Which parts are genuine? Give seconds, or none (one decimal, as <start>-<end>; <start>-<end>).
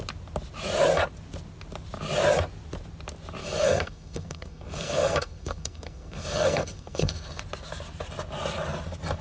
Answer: 0.0-3.4; 7.4-9.2